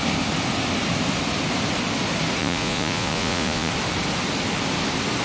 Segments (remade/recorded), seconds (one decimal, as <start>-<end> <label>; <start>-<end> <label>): 0.0-2.4 recorded; 2.4-3.7 remade; 3.7-5.2 recorded